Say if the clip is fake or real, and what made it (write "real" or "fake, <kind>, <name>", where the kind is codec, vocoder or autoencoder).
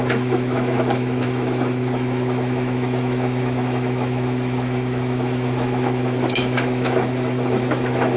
fake, autoencoder, DAC-VAE